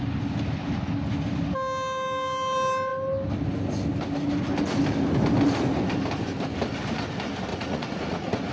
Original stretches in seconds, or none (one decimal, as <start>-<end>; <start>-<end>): 0.0-7.5